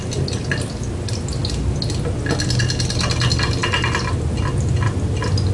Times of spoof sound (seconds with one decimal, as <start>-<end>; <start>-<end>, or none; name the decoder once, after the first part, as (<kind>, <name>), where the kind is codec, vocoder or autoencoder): none